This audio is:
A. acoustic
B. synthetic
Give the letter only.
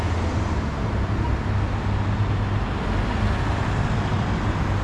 A